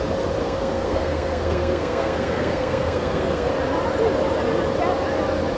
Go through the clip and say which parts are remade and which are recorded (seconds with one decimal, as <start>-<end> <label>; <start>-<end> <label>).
0.0-0.4 recorded; 0.4-3.5 remade; 3.5-5.6 recorded

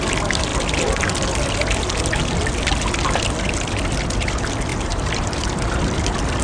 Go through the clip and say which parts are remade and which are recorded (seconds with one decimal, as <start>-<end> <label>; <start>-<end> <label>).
0.0-4.7 recorded; 4.7-5.4 remade; 5.4-6.4 recorded

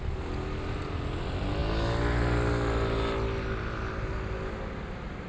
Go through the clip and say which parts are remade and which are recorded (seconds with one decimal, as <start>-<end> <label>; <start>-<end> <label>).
0.0-5.3 recorded

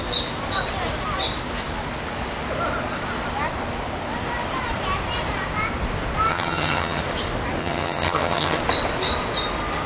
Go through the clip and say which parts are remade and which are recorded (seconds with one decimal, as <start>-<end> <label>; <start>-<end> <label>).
0.0-6.3 recorded; 6.3-7.0 remade; 7.0-7.6 recorded; 7.6-8.6 remade; 8.6-9.9 recorded

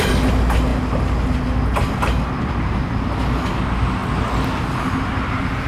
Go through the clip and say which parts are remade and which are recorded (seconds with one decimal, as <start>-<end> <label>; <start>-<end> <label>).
0.0-5.7 recorded

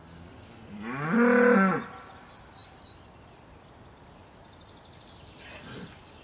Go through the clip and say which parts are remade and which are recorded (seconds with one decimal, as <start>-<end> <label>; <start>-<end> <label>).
0.0-6.2 recorded